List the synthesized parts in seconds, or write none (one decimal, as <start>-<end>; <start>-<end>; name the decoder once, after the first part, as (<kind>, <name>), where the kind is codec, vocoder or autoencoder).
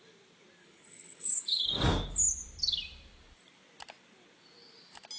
0.6-1.6 (codec, HILCodec)